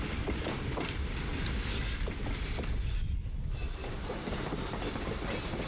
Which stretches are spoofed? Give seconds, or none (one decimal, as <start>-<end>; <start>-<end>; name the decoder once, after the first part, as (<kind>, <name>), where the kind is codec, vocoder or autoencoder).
none